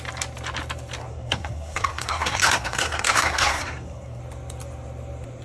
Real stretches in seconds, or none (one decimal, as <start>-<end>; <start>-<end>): 0.0-1.0; 4.2-5.4